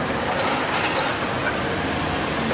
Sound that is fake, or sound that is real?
real